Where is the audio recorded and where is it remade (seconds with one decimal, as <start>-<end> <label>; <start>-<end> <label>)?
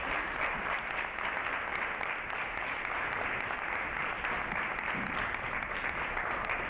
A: 0.0-6.7 recorded